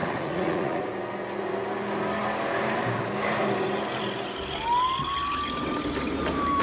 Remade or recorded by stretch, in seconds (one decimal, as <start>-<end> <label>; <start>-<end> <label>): 0.0-0.8 remade; 0.8-6.6 recorded